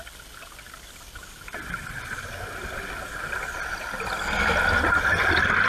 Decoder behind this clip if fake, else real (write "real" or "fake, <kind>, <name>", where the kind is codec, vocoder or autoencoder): real